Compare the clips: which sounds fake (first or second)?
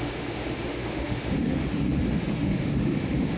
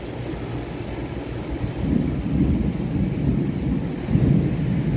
first